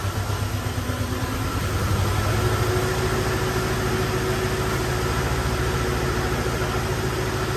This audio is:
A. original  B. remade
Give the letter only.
A